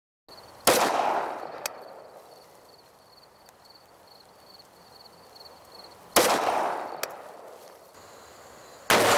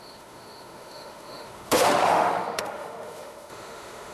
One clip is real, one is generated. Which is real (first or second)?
first